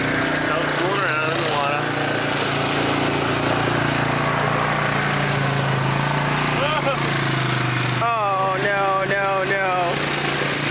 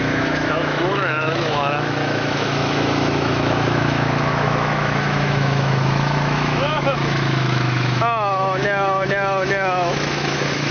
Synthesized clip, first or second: second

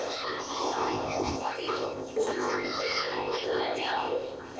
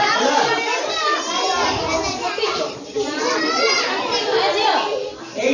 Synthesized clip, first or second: first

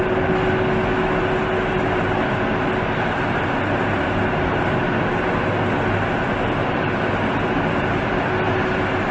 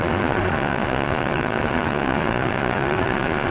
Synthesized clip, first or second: second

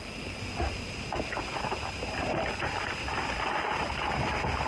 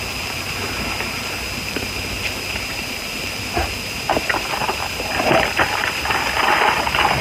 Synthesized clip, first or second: second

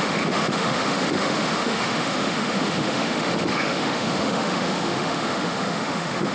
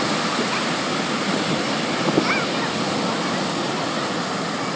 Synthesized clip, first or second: first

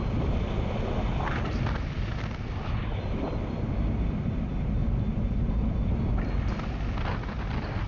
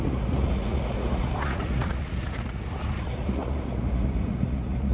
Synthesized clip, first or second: second